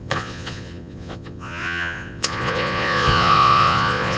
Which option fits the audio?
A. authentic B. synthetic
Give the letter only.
B